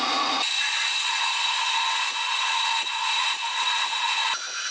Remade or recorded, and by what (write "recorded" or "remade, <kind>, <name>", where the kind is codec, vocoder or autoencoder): remade, vocoder, Vocos